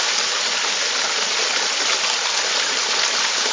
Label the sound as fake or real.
real